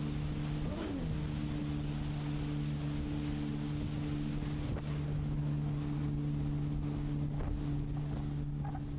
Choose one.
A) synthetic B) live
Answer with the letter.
B